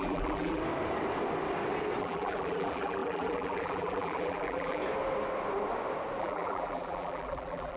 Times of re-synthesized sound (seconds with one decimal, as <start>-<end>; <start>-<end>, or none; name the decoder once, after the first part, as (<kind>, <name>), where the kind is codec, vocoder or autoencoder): 0.0-0.6 (vocoder, BigVGAN v2); 2.0-4.8; 6.2-7.8